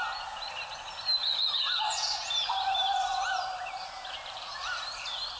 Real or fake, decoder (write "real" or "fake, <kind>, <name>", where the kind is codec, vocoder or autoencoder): fake, vocoder, BigVGAN v2